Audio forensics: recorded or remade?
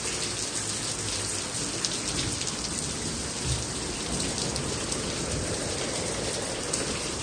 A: recorded